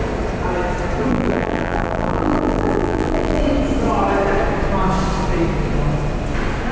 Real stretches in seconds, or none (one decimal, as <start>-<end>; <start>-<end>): 0.0-1.1; 3.4-6.7